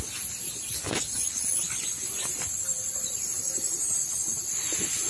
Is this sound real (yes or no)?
yes